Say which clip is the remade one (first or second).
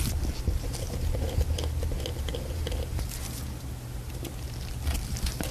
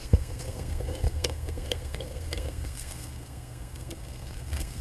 second